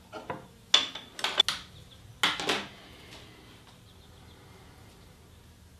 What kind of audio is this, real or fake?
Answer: real